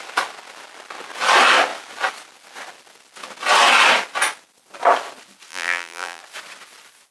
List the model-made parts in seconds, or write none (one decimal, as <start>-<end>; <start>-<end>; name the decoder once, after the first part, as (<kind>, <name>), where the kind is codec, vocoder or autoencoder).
5.5-6.2 (vocoder, BigVGAN v2)